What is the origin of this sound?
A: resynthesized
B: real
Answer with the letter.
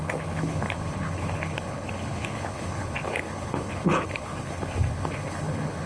A